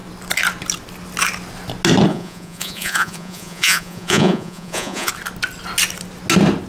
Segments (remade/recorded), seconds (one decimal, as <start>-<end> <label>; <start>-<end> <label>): 0.0-2.1 recorded; 2.1-5.1 remade; 5.1-6.7 recorded